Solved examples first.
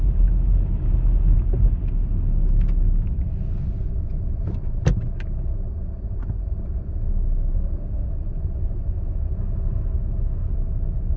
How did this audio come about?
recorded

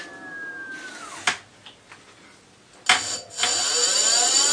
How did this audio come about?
recorded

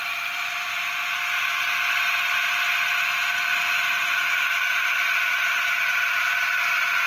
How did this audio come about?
recorded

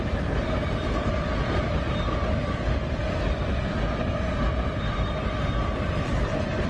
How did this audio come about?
recorded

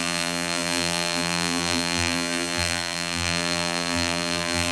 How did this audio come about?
remade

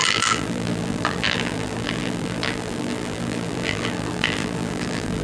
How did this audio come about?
remade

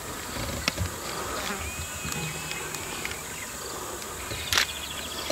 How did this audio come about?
recorded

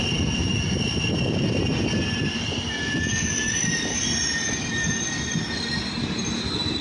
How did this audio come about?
remade